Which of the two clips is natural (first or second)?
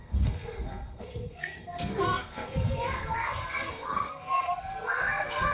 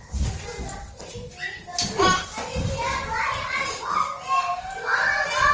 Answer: second